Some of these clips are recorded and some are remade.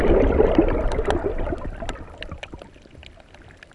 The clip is recorded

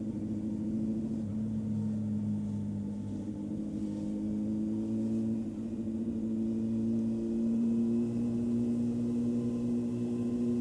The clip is recorded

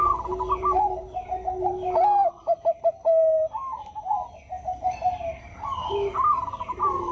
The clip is recorded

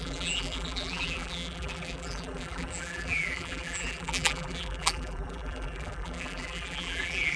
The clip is remade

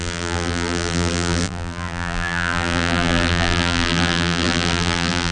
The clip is remade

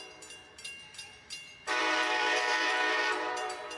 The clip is remade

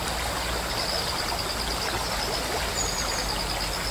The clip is recorded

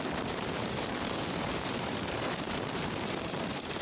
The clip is remade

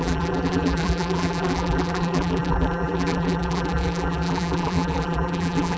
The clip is remade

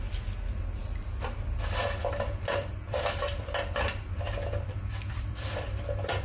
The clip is remade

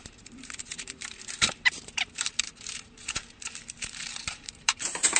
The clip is remade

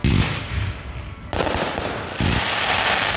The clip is recorded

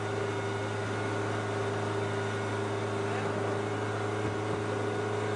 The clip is recorded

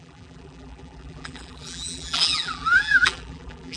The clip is remade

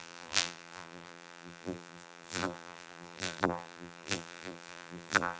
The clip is remade